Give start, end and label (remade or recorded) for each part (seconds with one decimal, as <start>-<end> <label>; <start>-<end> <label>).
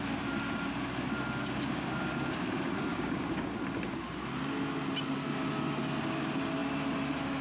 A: 0.0-2.9 recorded; 2.9-3.6 remade; 3.6-7.4 recorded